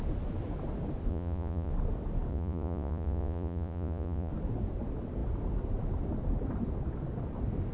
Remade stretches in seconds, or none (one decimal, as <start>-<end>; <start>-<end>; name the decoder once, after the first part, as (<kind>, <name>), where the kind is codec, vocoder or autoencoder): 1.1-1.7 (vocoder, Vocos); 2.3-4.3

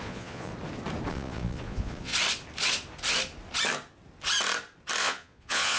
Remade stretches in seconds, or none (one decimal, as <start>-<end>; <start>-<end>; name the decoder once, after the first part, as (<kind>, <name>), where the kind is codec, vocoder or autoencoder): 0.0-0.5 (vocoder, Vocos); 1.1-2.1; 5.0-5.8

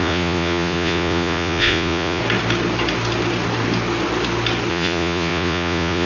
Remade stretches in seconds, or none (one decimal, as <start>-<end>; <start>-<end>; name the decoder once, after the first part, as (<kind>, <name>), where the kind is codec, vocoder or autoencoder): 0.0-2.2 (vocoder, Vocos); 4.7-6.1

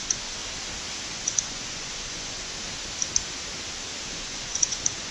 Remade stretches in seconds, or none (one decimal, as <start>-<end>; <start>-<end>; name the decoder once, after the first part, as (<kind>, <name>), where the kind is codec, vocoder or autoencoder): 0.0-0.4 (vocoder, Vocos); 1.1-2.5; 4.1-5.1